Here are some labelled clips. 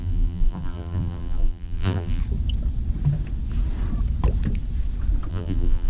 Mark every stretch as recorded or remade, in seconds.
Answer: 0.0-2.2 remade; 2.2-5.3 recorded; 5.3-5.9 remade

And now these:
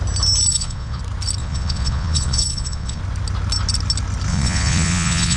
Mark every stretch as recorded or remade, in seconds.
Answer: 0.0-0.5 recorded; 0.5-1.0 remade; 1.0-1.4 recorded; 1.4-3.0 remade; 3.0-4.3 recorded; 4.3-5.4 remade